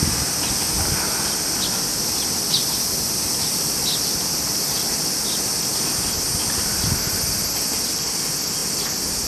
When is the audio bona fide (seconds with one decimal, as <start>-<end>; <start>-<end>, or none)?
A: 0.0-9.3